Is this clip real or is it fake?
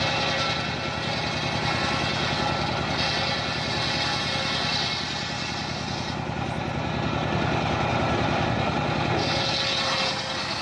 real